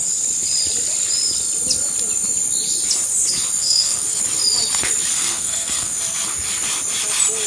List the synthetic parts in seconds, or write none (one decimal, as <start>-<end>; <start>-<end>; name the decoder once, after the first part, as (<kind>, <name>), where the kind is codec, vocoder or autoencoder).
3.6-4.2 (codec, SNAC); 5.1-6.0